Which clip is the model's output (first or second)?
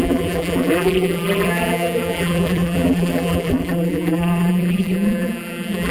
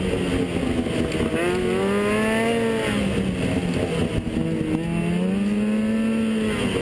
first